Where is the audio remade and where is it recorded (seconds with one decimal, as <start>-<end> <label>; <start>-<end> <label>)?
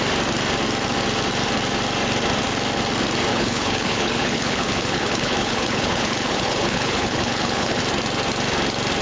0.0-3.3 recorded; 3.3-7.8 remade; 7.8-9.0 recorded